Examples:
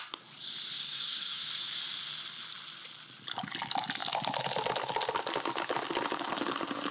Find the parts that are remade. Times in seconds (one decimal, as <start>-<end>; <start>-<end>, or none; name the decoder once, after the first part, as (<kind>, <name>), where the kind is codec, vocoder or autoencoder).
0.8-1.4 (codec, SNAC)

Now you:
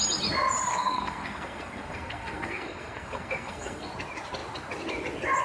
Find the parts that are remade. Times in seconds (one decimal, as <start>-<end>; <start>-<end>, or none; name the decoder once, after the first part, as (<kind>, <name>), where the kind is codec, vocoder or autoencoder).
0.7-3.9 (codec, SNAC)

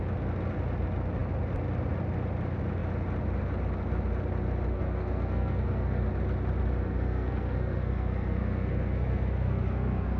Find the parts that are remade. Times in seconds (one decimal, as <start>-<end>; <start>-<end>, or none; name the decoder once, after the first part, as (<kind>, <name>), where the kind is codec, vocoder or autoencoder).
4.7-6.0 (codec, SNAC); 6.8-10.2

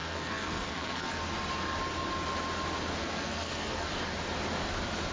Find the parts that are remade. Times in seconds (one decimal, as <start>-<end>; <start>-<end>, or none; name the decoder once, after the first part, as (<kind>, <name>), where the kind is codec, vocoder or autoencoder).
0.0-1.2 (codec, SNAC); 3.0-3.9

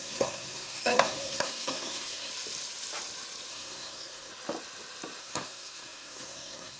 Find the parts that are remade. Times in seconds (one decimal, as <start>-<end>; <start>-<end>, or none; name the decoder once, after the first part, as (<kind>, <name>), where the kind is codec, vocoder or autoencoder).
0.0-2.3 (codec, SNAC); 3.5-4.3; 5.2-6.8

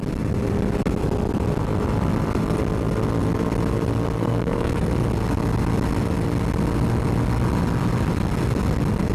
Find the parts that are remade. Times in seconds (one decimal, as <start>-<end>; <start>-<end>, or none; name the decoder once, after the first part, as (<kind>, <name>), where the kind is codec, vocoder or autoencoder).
4.2-4.9 (codec, SNAC)

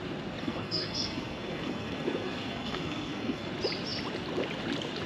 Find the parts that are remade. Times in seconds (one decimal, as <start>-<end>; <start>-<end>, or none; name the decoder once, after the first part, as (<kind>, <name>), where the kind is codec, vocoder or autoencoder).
0.4-3.5 (codec, SNAC)